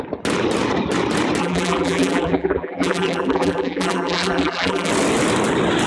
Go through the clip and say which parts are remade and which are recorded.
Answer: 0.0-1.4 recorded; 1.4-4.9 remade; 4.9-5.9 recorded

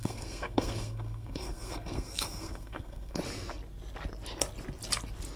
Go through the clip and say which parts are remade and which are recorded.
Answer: 0.0-3.2 remade; 3.2-5.4 recorded

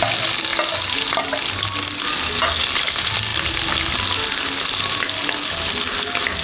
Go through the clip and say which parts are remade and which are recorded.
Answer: 0.0-6.4 recorded

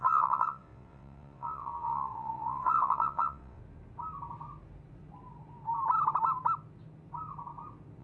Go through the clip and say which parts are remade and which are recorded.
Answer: 0.0-3.6 remade; 3.6-8.0 recorded

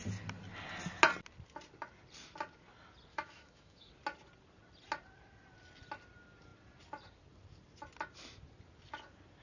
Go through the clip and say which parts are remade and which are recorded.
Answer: 0.0-3.1 recorded; 3.1-3.9 remade; 3.9-9.4 recorded

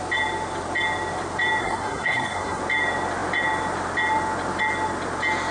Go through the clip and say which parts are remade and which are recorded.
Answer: 0.0-1.6 recorded; 1.6-2.6 remade; 2.6-5.5 recorded